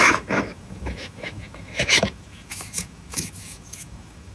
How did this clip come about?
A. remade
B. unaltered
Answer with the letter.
A